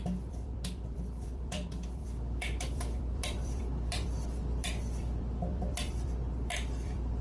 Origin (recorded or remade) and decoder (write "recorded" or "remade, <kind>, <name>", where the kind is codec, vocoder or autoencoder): remade, vocoder, BigVGAN v2